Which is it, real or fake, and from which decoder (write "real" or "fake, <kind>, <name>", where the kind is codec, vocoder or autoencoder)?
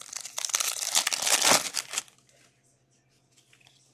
real